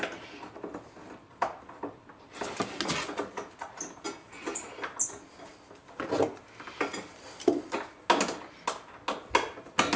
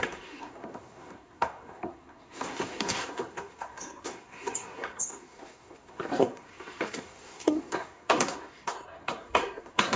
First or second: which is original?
first